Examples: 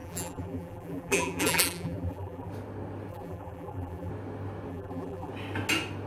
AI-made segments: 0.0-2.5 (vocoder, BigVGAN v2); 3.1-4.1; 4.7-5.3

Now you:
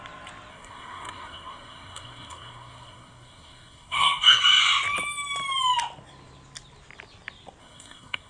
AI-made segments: 0.5-4.4 (codec, SNAC); 7.6-8.3

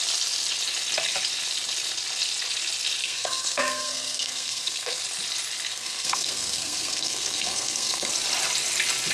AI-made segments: 3.0-5.0 (codec, SNAC); 5.7-8.1

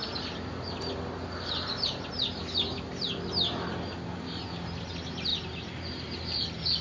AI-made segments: 0.0-2.1 (vocoder, BigVGAN v2)